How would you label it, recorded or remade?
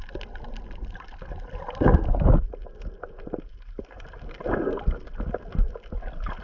recorded